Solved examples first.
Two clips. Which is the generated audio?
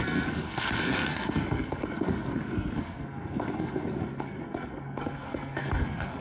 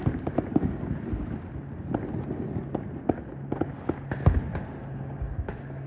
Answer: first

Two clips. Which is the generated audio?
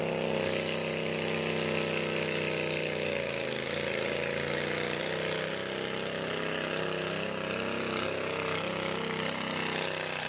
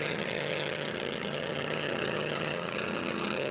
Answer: second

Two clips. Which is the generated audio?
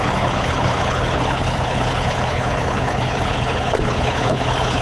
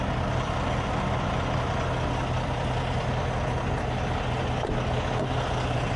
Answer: first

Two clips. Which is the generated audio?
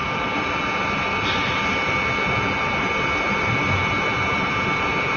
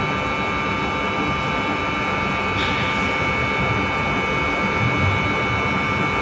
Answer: first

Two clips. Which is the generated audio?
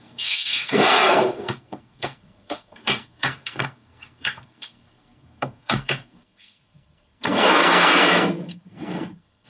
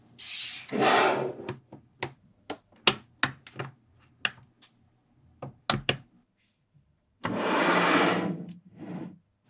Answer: first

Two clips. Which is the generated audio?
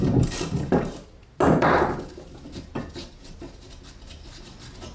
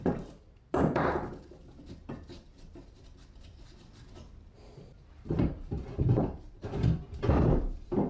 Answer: second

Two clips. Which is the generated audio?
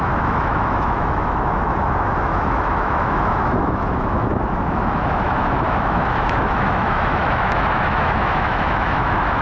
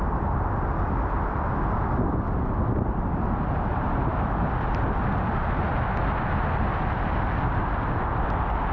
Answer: first